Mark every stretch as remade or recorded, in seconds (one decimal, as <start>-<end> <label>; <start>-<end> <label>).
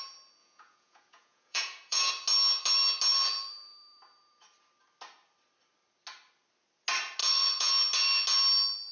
0.0-0.4 recorded; 0.4-2.1 remade; 2.1-7.2 recorded; 7.2-7.7 remade; 7.7-8.9 recorded